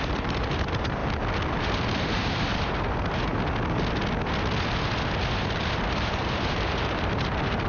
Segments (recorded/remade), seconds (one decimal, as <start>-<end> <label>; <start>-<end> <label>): 0.0-1.0 remade; 1.0-1.5 recorded; 1.5-3.3 remade; 3.3-5.4 recorded; 5.4-7.7 remade